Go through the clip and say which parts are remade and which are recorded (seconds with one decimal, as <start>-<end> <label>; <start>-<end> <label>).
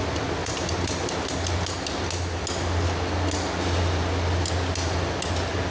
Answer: 0.0-0.4 recorded; 0.4-1.3 remade; 1.3-5.7 recorded